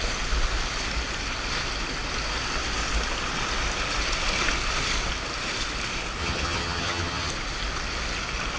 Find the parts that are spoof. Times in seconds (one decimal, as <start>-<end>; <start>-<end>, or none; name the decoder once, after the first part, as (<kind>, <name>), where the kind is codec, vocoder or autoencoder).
6.2-7.3 (vocoder, HiFi-GAN)